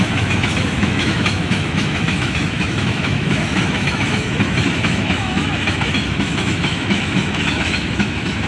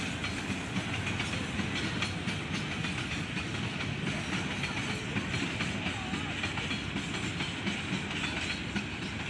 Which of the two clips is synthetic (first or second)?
first